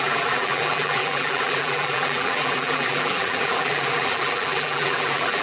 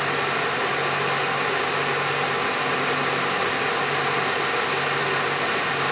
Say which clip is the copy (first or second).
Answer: first